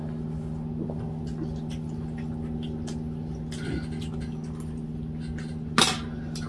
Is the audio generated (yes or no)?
no